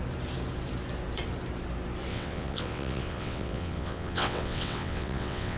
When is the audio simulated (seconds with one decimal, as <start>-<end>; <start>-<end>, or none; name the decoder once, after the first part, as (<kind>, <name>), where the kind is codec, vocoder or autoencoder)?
2.1-5.6 (vocoder, WaveNeXt)